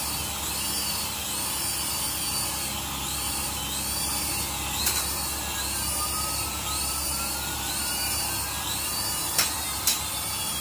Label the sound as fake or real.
real